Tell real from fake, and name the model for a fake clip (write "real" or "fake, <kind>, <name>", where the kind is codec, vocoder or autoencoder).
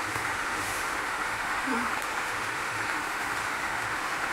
fake, autoencoder, DAC-VAE